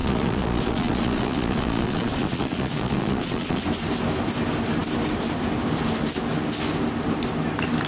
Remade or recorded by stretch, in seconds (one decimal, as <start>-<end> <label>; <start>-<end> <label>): 0.0-3.6 remade; 3.6-7.9 recorded